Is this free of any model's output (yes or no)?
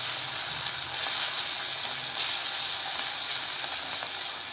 yes